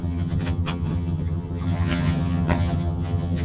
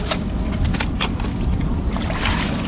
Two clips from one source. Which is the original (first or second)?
second